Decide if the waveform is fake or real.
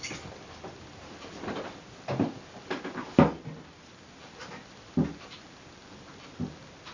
real